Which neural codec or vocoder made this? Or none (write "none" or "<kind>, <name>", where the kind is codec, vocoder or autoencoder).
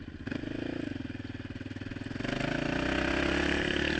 none